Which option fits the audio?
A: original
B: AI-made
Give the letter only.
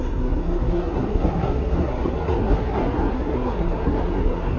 B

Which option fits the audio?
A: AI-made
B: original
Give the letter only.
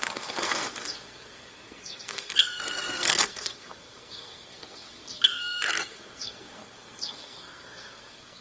A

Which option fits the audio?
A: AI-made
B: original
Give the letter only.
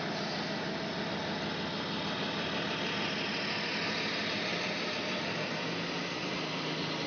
B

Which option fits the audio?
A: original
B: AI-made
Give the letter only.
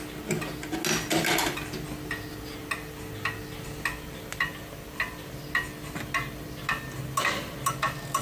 A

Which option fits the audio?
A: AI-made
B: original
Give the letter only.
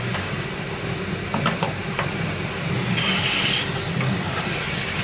B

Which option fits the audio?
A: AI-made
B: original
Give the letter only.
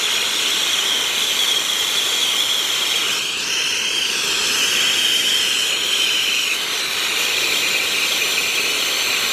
B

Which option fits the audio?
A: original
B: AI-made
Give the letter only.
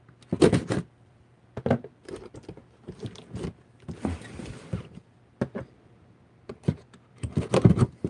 A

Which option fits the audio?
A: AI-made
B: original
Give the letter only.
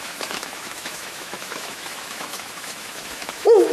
A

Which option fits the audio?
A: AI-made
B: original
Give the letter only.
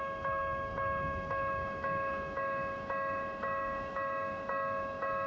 A